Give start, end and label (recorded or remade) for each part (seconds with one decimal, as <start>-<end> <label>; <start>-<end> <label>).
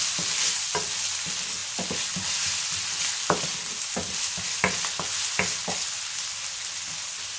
0.0-7.4 recorded